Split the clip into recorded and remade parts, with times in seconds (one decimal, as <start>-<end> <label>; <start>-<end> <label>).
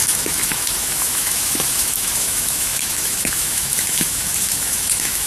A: 0.0-5.3 remade